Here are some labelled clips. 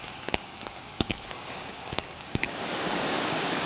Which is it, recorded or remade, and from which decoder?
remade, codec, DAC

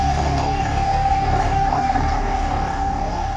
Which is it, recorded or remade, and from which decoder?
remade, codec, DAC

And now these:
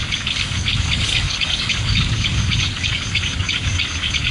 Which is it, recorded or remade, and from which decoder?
remade, codec, DAC